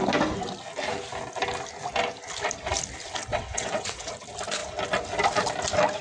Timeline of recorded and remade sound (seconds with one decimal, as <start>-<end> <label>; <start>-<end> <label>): 0.0-3.3 recorded; 3.3-4.1 remade; 4.1-6.0 recorded